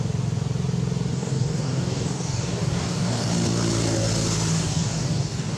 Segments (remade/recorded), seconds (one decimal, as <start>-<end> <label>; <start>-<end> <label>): 0.0-1.1 recorded; 1.1-3.3 remade; 3.3-4.5 recorded; 4.5-5.6 remade